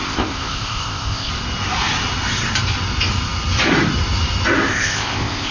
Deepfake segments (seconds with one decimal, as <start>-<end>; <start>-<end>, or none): 0.0-1.3; 4.7-5.5